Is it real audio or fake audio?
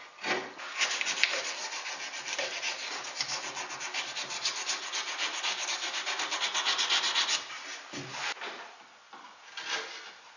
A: real